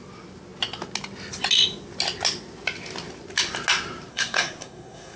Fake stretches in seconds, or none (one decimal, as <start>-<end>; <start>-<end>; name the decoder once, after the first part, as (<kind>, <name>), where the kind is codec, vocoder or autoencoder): 4.1-5.2 (codec, SNAC)